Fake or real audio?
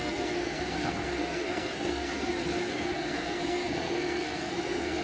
fake